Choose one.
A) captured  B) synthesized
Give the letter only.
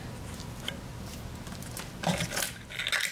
A